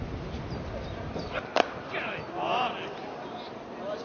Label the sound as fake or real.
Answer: real